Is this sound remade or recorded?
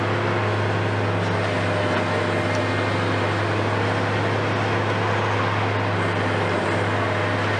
recorded